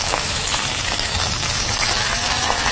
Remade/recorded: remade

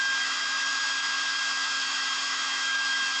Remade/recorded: remade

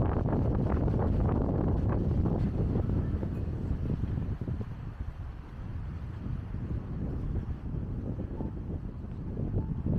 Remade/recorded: recorded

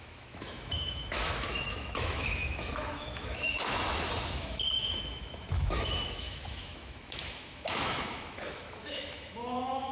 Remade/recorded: remade